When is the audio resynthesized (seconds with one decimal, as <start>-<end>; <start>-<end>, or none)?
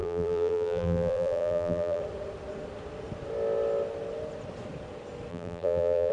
0.0-2.0; 5.3-6.1